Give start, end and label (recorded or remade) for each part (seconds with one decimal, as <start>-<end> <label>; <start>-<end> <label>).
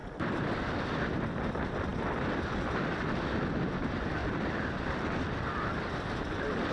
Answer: 0.0-1.9 recorded; 1.9-2.9 remade; 2.9-4.2 recorded; 4.2-5.0 remade; 5.0-6.7 recorded